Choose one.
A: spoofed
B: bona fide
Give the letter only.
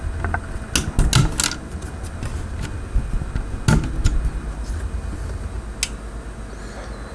B